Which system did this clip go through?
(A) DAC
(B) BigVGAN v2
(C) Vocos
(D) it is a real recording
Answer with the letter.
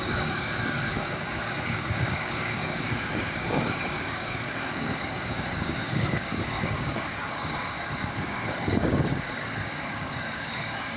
A